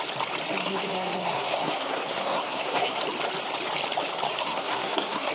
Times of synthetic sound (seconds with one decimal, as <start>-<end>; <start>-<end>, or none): 0.6-3.0; 4.4-5.3